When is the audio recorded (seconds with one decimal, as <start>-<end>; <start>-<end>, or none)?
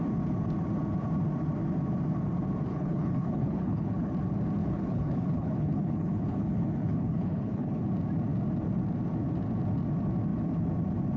0.0-2.7; 4.1-4.6; 7.8-11.2